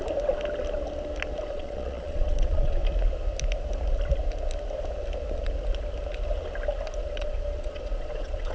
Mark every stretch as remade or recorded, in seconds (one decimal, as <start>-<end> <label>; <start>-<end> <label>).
0.0-1.5 recorded; 1.5-2.8 remade; 2.8-7.0 recorded; 7.0-8.5 remade